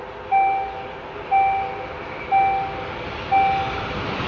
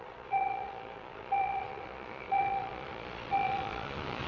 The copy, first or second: second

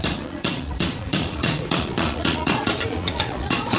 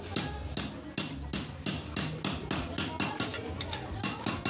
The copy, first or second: first